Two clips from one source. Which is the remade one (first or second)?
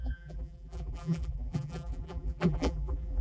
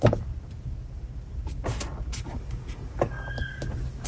first